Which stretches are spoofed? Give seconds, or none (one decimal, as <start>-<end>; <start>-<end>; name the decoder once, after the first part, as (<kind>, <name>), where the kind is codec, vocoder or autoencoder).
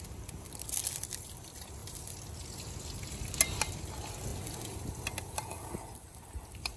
none